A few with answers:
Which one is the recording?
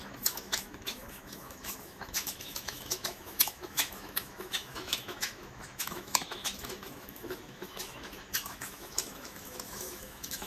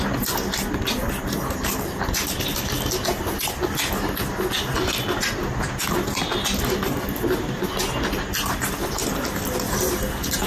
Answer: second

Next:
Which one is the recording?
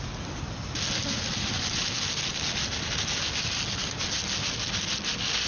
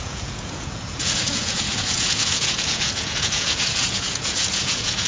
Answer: first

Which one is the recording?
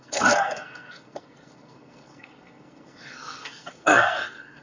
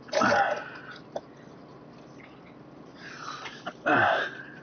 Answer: second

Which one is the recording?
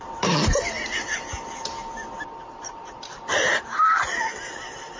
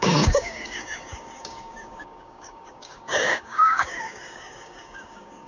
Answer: first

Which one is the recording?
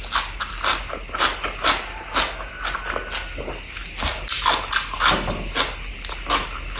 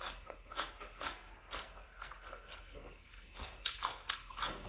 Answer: first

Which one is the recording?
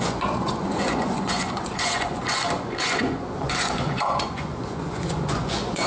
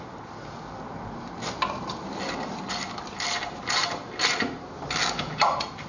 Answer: second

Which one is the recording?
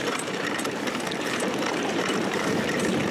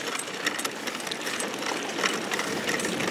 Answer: second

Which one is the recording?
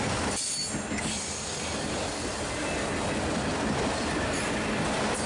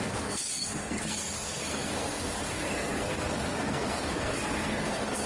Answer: first